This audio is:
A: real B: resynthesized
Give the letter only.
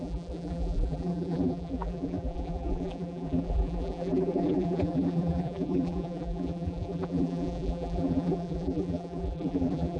B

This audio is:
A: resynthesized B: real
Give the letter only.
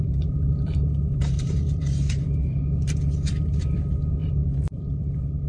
A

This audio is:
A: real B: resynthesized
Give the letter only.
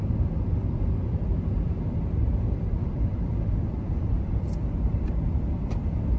B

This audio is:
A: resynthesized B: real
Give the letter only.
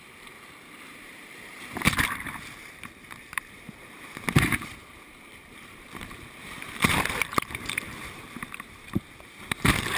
A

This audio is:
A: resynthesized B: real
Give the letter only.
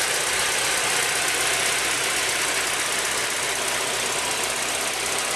B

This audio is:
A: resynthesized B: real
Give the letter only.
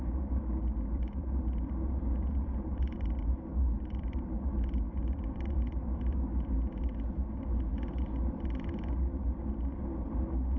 A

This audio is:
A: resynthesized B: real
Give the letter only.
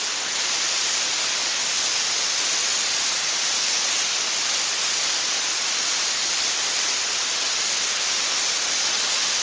B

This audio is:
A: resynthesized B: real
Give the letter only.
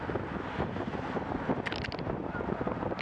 B